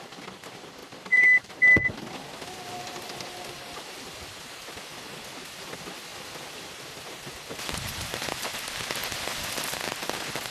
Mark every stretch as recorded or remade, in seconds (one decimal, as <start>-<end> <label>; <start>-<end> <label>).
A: 0.0-10.5 recorded